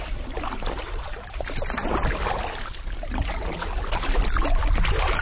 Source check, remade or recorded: recorded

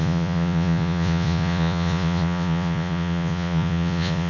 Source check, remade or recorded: remade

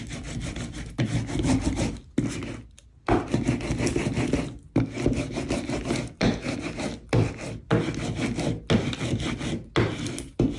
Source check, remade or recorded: recorded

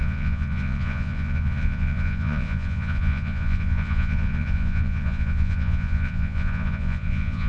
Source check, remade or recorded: remade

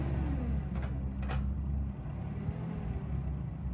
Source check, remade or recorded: recorded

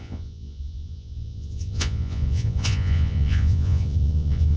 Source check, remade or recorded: remade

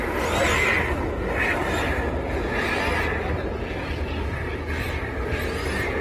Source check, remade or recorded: recorded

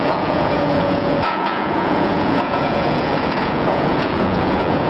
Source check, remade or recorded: remade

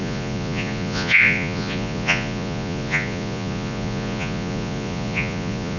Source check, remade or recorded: remade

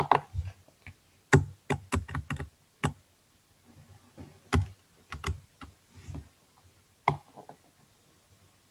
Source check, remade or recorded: recorded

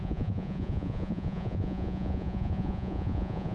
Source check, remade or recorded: remade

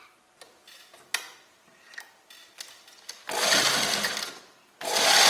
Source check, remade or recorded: recorded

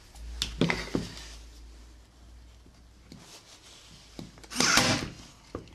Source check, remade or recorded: recorded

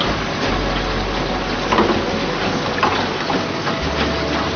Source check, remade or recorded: recorded